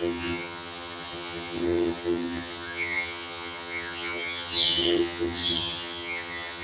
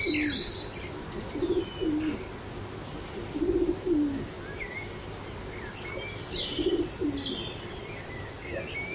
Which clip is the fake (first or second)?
first